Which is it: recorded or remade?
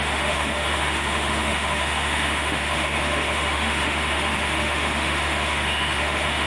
remade